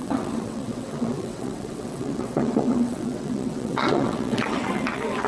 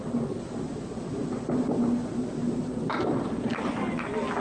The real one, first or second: second